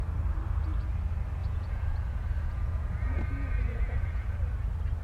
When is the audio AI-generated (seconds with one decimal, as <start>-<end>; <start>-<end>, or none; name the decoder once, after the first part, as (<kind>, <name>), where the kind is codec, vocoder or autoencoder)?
1.4-4.4 (vocoder, Vocos)